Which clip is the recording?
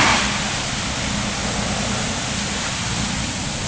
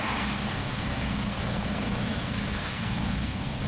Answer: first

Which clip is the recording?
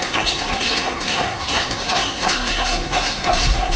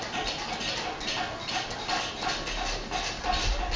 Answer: second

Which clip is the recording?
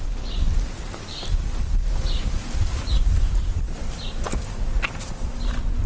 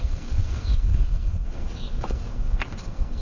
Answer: first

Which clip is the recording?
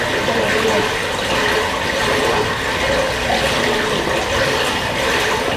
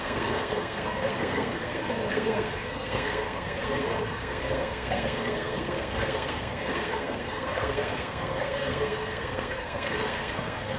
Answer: first